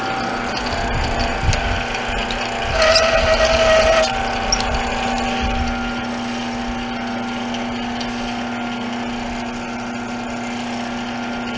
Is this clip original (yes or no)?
yes